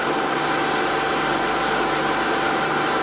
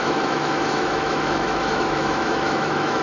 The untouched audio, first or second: first